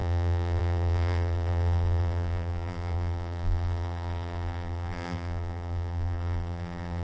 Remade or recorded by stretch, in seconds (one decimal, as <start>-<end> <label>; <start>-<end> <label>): 0.0-7.0 remade